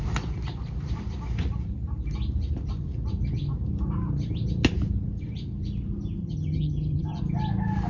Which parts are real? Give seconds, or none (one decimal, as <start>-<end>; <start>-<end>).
0.0-6.2; 7.2-7.9